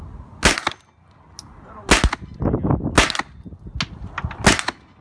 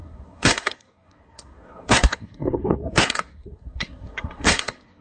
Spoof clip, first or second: second